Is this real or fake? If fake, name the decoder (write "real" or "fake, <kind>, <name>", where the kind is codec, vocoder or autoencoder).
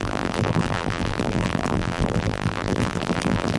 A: fake, vocoder, BigVGAN v2